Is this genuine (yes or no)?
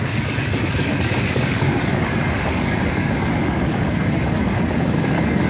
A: no